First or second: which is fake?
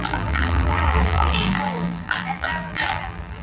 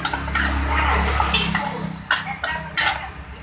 first